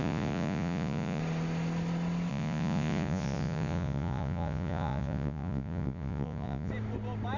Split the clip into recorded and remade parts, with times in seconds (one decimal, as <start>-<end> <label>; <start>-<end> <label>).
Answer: 0.0-1.2 remade; 1.2-2.3 recorded; 2.3-6.7 remade; 6.7-7.4 recorded